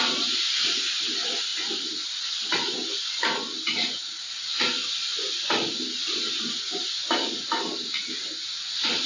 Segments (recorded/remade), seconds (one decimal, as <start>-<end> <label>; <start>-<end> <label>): 0.0-9.1 recorded